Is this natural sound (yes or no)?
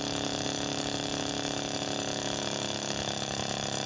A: no